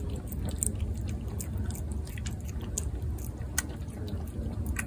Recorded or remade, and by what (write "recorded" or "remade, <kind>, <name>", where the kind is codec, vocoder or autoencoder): recorded